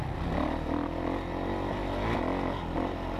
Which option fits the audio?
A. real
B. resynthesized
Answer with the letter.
A